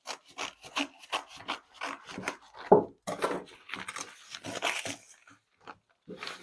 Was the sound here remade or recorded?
recorded